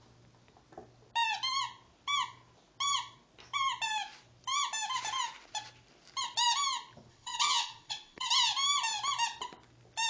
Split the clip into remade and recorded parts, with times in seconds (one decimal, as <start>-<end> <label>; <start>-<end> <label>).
0.0-7.1 recorded; 7.1-8.3 remade; 8.3-10.1 recorded